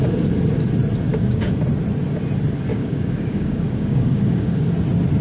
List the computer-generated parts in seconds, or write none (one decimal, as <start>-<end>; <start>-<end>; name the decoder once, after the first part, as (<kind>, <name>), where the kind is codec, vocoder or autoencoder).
1.1-1.6 (codec, DAC); 2.7-4.7